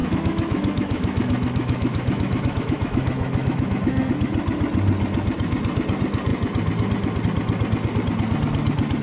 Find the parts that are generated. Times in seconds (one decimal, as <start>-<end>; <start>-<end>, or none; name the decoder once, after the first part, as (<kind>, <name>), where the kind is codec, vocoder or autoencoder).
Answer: 0.0-4.1 (autoencoder, DAC-VAE)